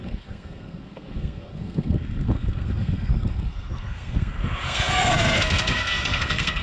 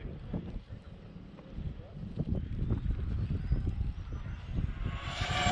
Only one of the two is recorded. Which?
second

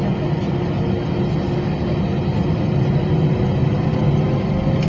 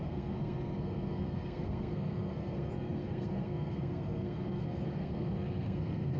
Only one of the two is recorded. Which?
first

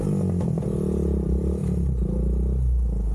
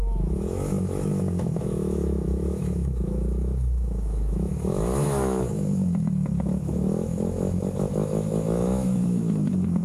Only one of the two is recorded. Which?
first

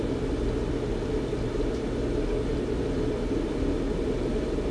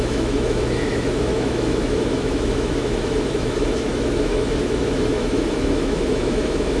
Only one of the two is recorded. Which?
first